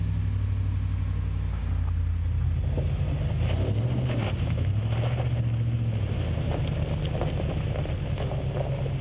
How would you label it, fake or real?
real